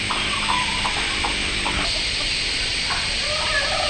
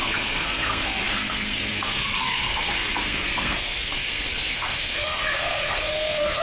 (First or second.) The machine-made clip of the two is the second